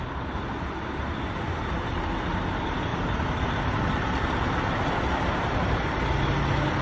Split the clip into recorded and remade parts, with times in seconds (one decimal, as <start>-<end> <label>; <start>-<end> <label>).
0.0-6.8 recorded

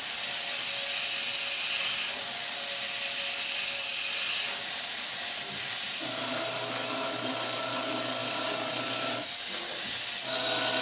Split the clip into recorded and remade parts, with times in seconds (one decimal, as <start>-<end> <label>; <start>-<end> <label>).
0.0-10.8 recorded

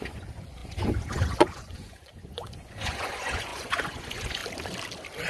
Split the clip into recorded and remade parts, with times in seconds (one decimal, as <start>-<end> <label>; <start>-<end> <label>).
0.0-4.4 remade; 4.4-5.3 recorded

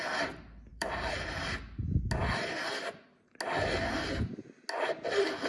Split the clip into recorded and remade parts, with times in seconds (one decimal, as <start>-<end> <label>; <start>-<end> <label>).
0.0-0.7 recorded; 0.7-1.3 remade; 1.3-5.5 recorded

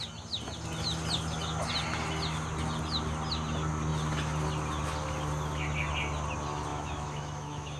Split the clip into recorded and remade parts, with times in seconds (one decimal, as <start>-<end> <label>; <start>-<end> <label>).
0.0-6.7 recorded; 6.7-7.8 remade

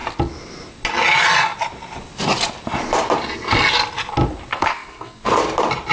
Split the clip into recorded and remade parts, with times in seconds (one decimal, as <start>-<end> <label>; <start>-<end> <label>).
0.0-4.5 recorded; 4.5-5.3 remade; 5.3-5.9 recorded

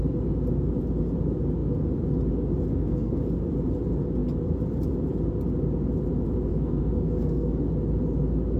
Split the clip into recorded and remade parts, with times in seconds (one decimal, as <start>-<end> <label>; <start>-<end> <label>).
0.0-2.7 recorded; 2.7-3.3 remade; 3.3-6.5 recorded; 6.5-7.6 remade; 7.6-8.6 recorded